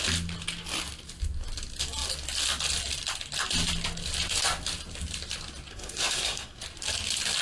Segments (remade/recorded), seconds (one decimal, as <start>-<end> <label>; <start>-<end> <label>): 0.0-5.7 recorded; 5.7-6.6 remade; 6.6-7.4 recorded